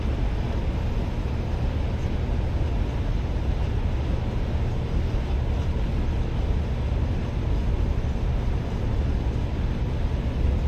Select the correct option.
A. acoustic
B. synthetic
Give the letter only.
A